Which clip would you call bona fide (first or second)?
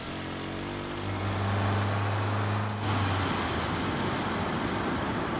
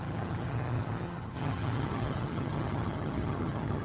first